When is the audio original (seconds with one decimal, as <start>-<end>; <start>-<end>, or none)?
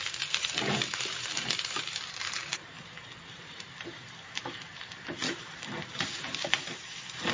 none